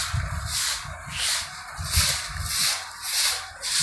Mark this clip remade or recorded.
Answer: recorded